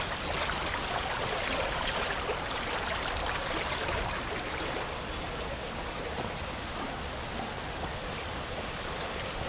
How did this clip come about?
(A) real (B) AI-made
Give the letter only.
A